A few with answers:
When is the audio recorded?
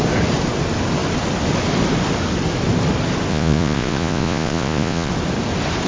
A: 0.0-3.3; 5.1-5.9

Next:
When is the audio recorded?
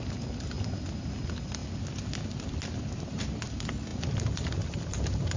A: 0.0-5.4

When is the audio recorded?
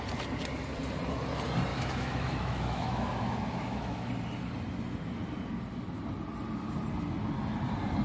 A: 0.0-1.7; 4.1-8.0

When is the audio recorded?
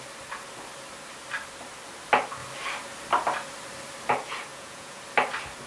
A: 0.0-4.5; 5.0-5.7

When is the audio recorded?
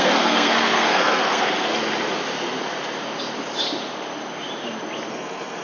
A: 1.7-5.1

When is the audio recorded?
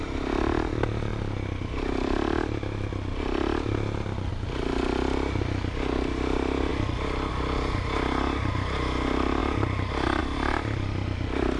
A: 0.0-11.6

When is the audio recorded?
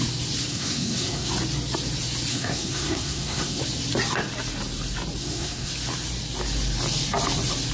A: 0.0-0.5; 1.3-2.3; 3.6-5.2; 5.7-7.7